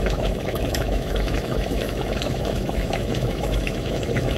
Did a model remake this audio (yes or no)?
yes